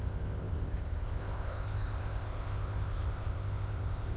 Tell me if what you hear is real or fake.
fake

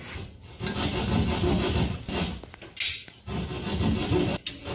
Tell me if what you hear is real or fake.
real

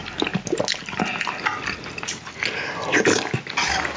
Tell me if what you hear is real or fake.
real